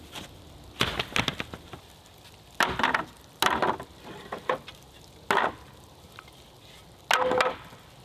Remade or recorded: recorded